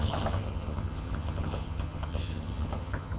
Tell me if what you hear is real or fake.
fake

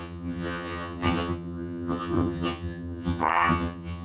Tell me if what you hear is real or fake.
fake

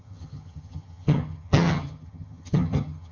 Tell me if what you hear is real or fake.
fake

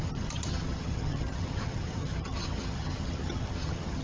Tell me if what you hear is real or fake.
fake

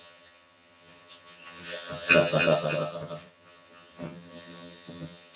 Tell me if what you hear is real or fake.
fake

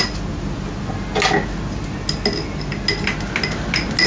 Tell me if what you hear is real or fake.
real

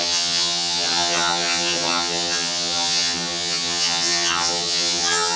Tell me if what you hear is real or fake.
fake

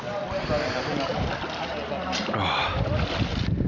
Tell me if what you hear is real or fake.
real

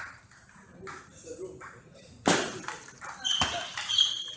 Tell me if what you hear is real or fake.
real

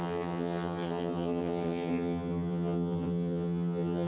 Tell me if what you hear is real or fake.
fake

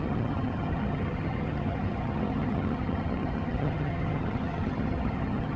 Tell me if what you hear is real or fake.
fake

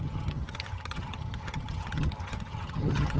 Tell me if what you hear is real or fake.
fake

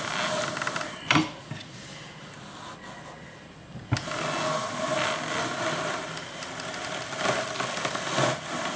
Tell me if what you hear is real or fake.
real